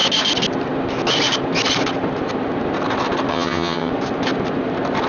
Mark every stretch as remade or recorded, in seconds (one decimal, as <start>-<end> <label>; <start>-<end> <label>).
0.0-3.3 recorded; 3.3-3.9 remade; 3.9-5.1 recorded